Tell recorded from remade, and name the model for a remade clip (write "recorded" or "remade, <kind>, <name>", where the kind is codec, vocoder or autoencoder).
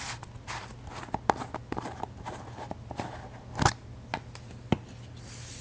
recorded